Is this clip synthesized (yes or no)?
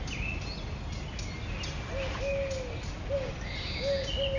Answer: no